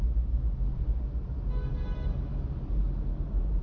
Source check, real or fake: real